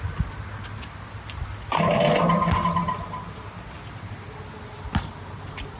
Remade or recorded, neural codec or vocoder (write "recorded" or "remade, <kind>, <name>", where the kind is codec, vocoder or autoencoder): recorded